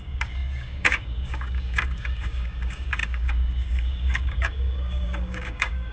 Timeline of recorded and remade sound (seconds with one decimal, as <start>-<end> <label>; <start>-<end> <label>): 0.0-5.9 remade